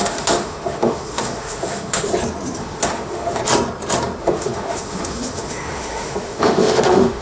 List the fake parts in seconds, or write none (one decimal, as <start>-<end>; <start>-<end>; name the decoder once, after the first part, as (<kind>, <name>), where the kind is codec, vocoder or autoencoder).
0.0-2.1 (autoencoder, DAC-VAE); 2.6-3.4; 4.2-7.2